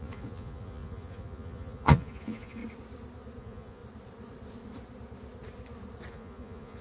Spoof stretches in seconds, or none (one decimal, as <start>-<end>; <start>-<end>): 0.0-2.6; 3.4-3.8; 6.1-6.8